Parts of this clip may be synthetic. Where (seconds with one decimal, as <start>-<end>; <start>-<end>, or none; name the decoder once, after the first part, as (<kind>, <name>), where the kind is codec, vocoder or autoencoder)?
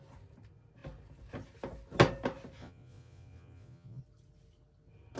2.6-4.0 (vocoder, Vocos)